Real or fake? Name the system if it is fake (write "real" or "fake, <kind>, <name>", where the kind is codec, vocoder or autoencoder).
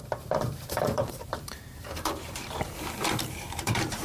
fake, vocoder, BigVGAN v2